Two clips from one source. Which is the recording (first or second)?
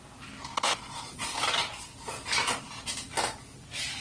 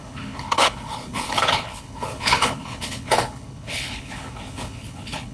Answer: first